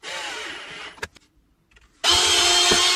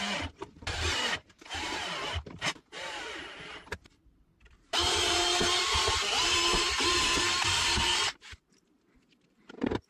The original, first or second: first